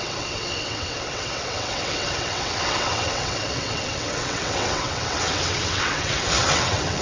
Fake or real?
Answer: fake